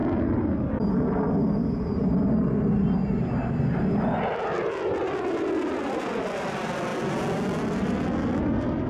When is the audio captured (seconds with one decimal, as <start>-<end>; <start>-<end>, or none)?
0.0-8.9